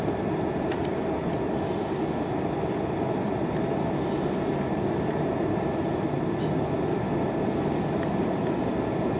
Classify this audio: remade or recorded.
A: recorded